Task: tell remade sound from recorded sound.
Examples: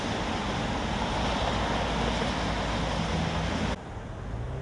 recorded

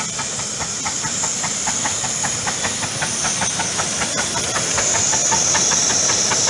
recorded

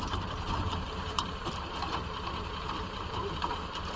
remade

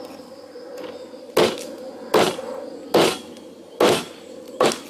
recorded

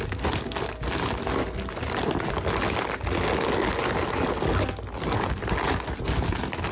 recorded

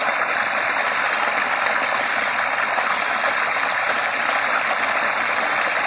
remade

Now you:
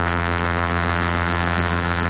remade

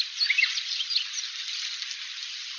recorded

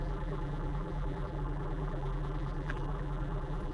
remade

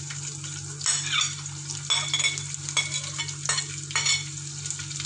recorded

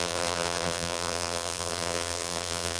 remade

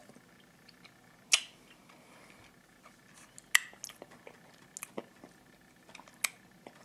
recorded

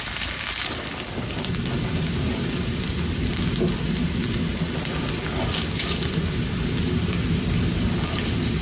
recorded